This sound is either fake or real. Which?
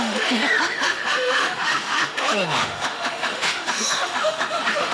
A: fake